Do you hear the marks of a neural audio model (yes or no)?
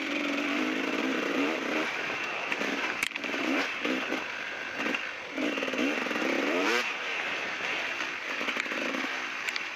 yes